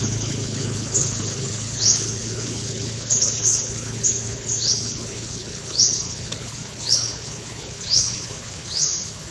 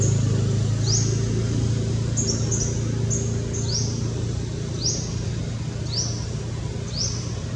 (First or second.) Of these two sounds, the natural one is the second